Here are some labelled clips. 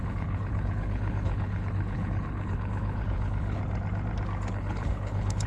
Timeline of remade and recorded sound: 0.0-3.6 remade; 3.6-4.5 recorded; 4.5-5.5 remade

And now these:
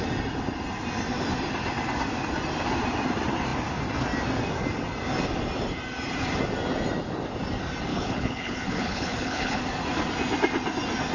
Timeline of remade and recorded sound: 0.0-7.9 recorded; 7.9-9.6 remade; 9.6-11.1 recorded

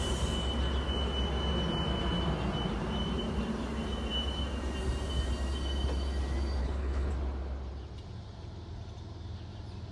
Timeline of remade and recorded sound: 0.0-6.6 recorded; 6.6-7.1 remade; 7.1-9.9 recorded

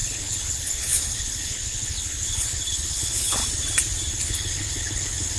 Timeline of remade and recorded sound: 0.0-3.4 remade; 3.4-4.1 recorded; 4.1-5.4 remade